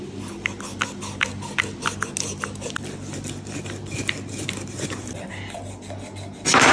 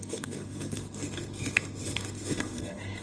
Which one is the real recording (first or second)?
first